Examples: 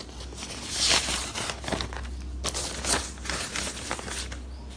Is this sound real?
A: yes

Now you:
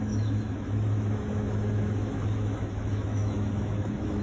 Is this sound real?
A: no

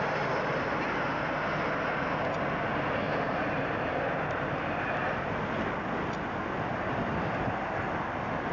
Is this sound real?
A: yes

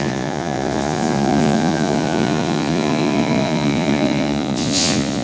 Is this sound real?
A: no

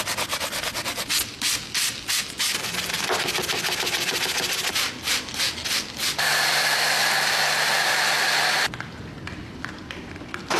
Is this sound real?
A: yes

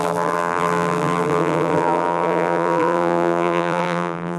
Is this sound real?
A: no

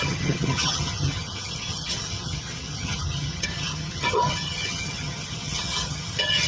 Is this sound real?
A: no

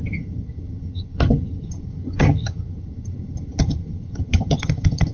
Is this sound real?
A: no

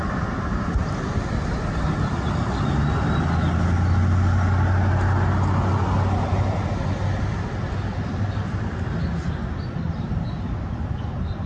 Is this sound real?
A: yes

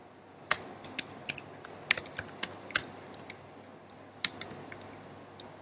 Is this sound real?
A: yes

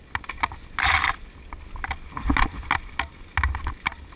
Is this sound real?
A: yes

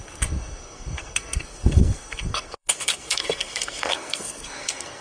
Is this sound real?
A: no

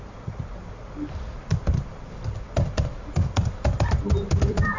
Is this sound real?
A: no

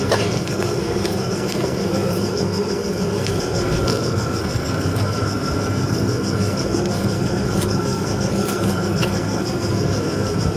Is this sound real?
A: no